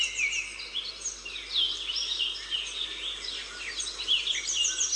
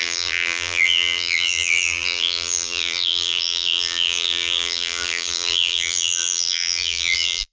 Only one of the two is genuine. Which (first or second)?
first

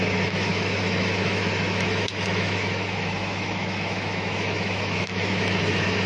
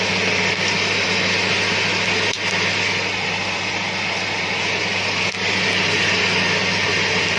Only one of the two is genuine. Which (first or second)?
second